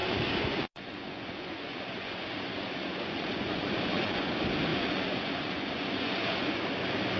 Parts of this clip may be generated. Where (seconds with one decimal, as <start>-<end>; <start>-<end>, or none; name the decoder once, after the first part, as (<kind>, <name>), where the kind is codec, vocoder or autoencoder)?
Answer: 0.0-4.3 (vocoder, Vocos); 4.7-6.6